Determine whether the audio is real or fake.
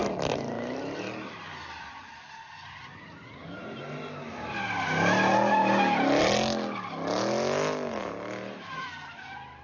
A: real